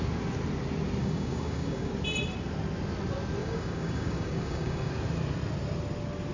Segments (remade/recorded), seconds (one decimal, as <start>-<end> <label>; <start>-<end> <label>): 0.0-1.0 recorded; 1.0-1.9 remade; 1.9-3.4 recorded; 3.4-4.9 remade; 4.9-6.3 recorded